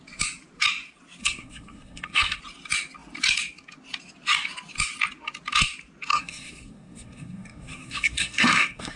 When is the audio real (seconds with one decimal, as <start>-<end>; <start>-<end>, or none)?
0.0-1.2; 2.4-6.1